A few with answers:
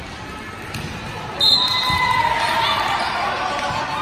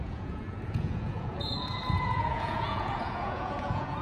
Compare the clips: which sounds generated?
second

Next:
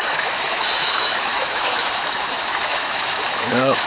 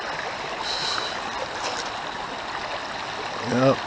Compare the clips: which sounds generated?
first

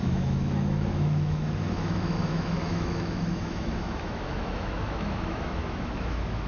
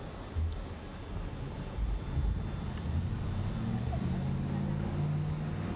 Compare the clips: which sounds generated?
first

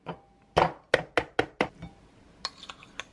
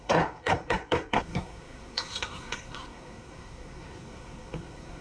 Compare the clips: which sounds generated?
second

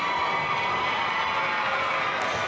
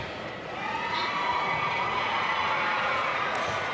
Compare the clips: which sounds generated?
second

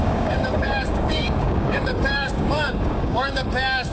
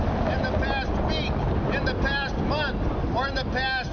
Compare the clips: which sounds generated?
first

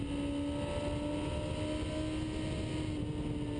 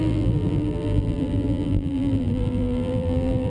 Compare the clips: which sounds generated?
second